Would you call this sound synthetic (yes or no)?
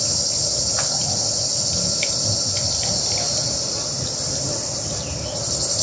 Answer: no